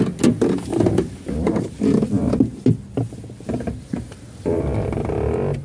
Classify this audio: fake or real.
real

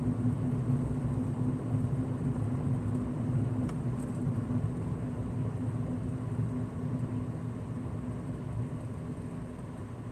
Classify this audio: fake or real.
real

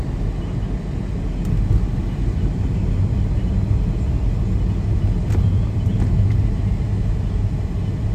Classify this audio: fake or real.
real